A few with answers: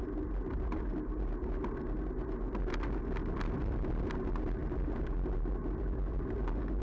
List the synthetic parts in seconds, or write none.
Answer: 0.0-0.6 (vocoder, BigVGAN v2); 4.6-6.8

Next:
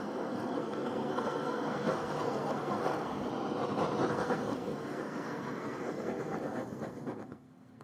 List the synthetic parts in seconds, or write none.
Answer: 0.0-3.3 (codec, SNAC); 4.1-7.8

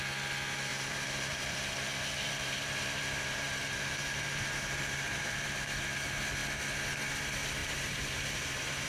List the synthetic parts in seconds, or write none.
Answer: 0.7-5.8 (vocoder, BigVGAN v2); 7.6-8.9

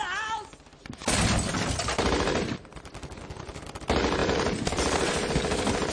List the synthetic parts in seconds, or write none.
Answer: 1.0-3.8 (vocoder, BigVGAN v2); 4.2-5.9

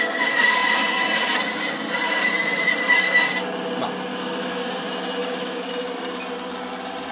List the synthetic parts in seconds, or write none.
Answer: 4.1-4.8 (codec, DAC); 5.2-5.7

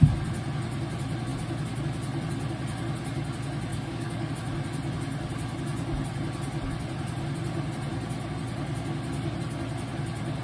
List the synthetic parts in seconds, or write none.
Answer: 3.7-4.3 (codec, DAC)

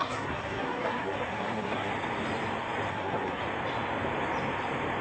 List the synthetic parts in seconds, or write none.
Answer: 0.0-1.9 (codec, SNAC); 2.9-3.4

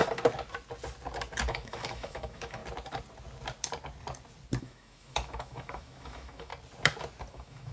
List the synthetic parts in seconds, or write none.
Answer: 1.5-2.6 (autoencoder, DAC-VAE); 4.6-6.5; 7.3-7.7